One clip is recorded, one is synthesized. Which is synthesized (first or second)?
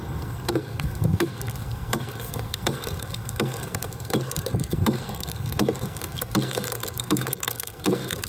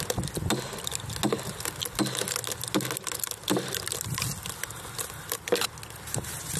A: first